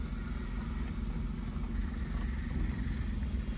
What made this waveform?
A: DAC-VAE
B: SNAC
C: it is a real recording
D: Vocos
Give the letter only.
C